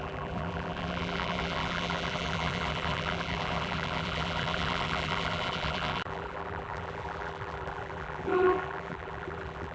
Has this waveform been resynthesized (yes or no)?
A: yes